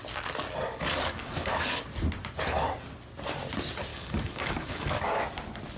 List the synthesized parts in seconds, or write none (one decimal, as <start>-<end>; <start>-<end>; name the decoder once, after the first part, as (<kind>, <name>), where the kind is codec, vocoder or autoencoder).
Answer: 0.7-1.8 (codec, DAC); 3.9-5.0